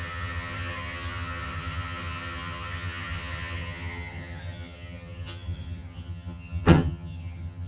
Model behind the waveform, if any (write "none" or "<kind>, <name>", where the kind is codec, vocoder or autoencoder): vocoder, HiFi-GAN